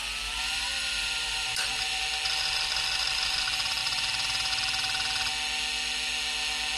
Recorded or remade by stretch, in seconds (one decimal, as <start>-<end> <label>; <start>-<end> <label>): 0.0-2.0 remade; 2.0-3.8 recorded; 3.8-4.5 remade; 4.5-6.8 recorded